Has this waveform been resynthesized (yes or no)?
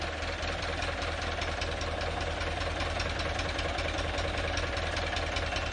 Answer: no